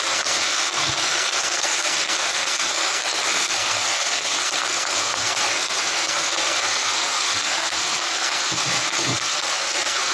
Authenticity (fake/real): fake